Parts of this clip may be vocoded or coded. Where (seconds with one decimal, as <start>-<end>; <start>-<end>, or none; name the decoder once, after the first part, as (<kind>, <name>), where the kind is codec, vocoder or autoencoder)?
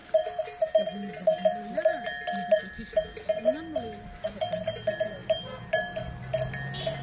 none